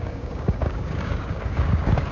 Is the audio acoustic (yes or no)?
no